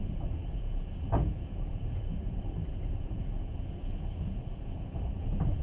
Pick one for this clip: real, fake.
fake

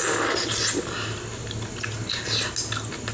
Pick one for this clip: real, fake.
real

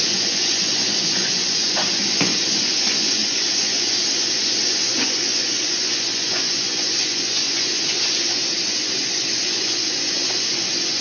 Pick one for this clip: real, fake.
fake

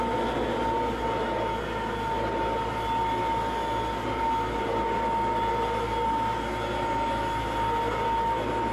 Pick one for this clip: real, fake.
real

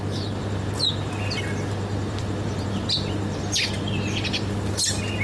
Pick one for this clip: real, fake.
real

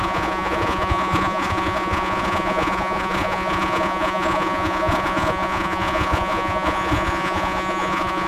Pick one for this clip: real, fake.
fake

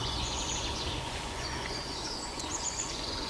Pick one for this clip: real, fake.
fake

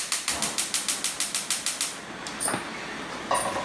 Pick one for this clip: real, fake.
real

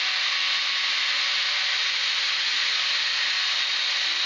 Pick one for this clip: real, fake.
real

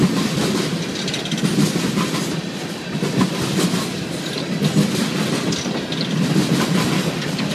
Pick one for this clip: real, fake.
real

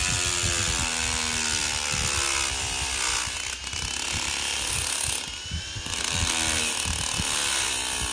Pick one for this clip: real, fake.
real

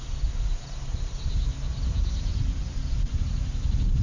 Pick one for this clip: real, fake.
real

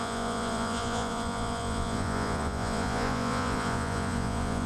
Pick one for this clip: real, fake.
fake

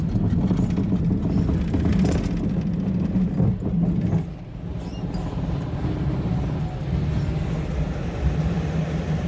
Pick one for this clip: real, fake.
real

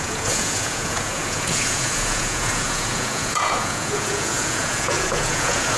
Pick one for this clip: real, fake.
fake